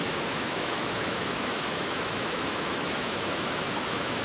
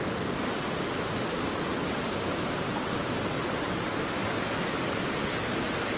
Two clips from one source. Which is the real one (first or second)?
second